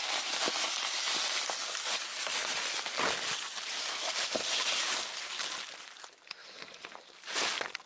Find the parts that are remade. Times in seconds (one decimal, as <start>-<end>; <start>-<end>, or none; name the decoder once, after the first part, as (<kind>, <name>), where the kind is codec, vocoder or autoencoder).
0.0-0.5 (vocoder, BigVGAN v2); 2.4-6.0; 6.4-7.4